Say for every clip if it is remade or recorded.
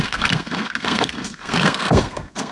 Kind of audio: remade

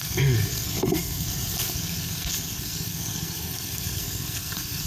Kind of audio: remade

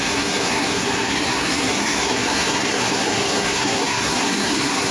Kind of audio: remade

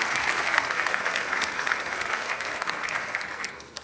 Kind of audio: remade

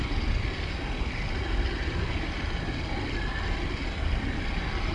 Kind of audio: recorded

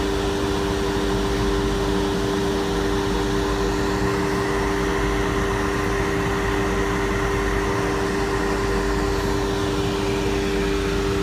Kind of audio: recorded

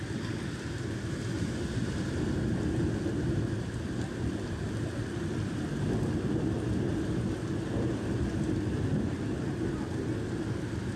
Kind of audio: recorded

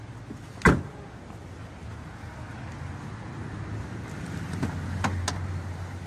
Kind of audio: recorded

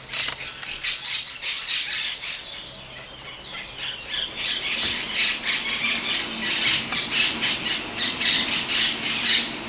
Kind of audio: recorded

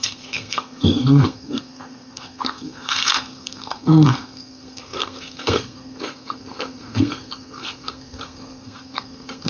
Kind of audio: remade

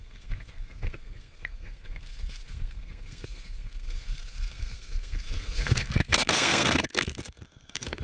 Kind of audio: remade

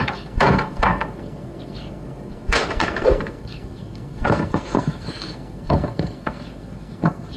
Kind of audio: remade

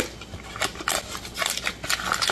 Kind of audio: recorded